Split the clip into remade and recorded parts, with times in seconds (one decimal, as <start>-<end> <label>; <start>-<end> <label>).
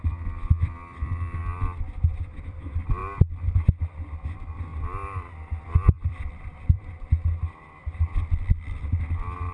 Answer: 0.0-4.7 recorded; 4.7-6.9 remade; 6.9-9.5 recorded